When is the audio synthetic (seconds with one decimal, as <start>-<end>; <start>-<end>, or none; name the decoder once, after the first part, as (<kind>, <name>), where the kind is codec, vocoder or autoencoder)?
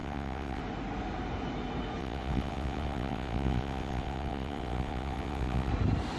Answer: 0.0-0.6 (vocoder, WaveNeXt); 2.0-5.7